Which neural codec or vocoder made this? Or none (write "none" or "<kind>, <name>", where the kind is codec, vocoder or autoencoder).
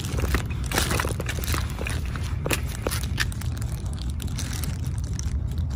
none